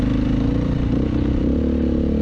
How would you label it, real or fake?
real